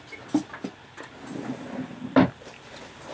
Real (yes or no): yes